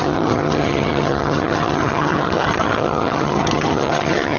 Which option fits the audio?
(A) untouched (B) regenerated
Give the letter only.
B